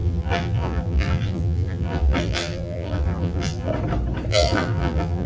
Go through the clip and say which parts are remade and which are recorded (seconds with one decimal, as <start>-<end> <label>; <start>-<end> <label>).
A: 0.0-3.7 remade; 3.7-4.3 recorded; 4.3-5.3 remade